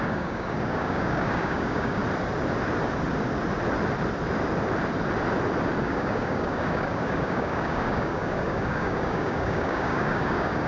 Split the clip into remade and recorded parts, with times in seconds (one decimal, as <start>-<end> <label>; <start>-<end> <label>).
0.0-2.0 remade; 2.0-5.8 recorded; 5.8-10.7 remade